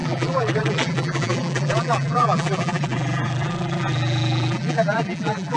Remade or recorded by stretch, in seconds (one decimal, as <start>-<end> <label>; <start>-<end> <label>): 0.0-5.6 remade